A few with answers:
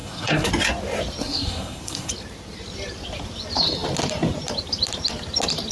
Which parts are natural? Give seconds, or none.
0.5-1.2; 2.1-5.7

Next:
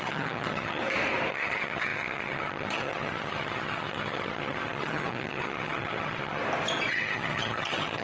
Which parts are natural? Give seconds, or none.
0.8-1.3; 6.4-6.9